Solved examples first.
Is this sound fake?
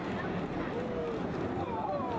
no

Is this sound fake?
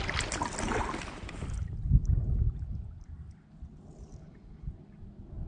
no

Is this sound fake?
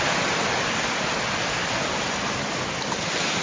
no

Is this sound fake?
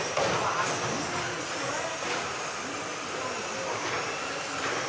no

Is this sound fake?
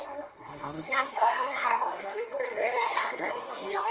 yes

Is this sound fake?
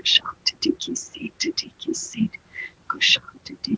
no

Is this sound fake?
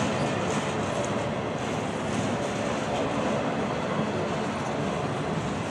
no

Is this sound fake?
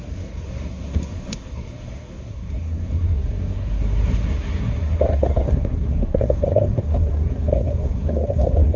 yes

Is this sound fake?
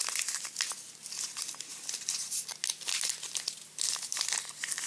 no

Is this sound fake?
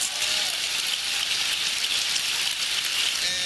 no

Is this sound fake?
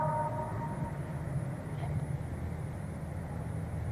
no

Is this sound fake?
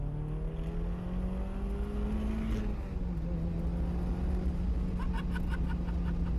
no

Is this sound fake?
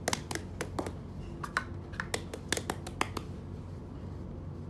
no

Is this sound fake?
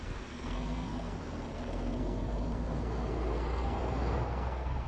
yes